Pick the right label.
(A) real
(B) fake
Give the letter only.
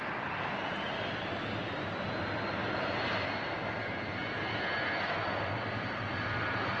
A